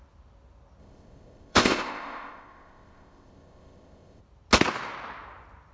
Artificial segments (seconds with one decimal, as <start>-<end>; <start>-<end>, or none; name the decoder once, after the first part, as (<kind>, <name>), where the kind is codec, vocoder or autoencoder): 0.8-4.2 (codec, ZipCodec)